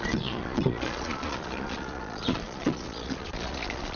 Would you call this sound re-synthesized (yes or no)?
yes